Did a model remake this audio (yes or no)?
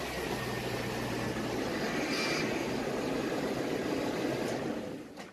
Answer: no